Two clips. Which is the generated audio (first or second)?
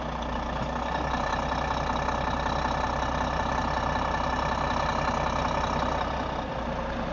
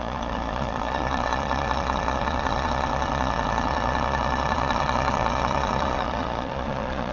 second